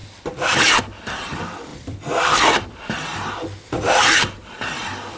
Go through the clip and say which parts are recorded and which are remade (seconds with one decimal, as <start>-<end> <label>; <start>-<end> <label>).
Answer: 0.0-0.8 remade; 0.8-1.7 recorded; 1.7-2.6 remade; 2.6-5.2 recorded